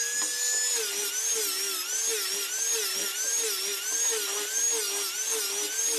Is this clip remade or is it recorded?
recorded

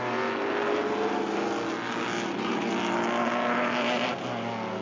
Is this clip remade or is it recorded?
recorded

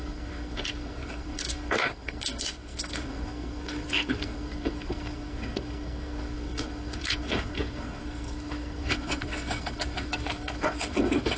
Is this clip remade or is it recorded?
remade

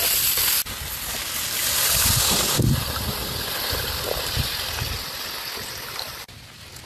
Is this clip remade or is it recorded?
recorded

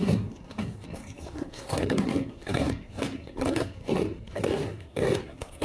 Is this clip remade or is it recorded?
remade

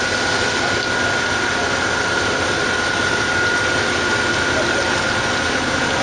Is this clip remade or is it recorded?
recorded